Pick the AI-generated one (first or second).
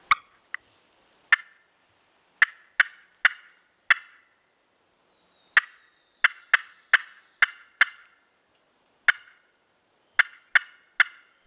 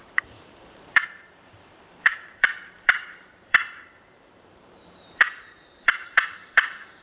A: second